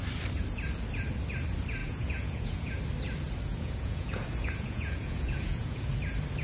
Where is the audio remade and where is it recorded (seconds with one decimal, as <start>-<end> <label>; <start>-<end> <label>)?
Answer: 0.0-1.8 recorded; 1.8-2.8 remade; 2.8-3.5 recorded; 3.5-5.9 remade; 5.9-6.4 recorded